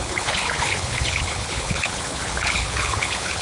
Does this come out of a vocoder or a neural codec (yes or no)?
yes